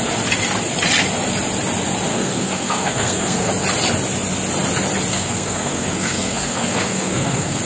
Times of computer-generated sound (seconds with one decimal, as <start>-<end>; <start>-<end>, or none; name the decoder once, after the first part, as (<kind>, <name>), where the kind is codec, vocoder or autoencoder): 2.1-3.5 (codec, SNAC); 5.1-7.6